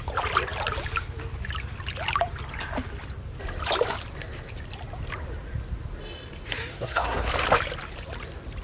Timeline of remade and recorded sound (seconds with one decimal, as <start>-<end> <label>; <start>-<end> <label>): 0.0-6.7 recorded; 6.7-7.3 remade; 7.3-8.6 recorded